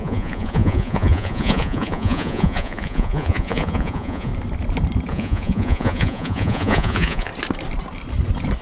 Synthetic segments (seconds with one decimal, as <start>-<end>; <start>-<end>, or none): 0.0-4.3; 5.1-7.3